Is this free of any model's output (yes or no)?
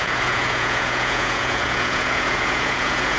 no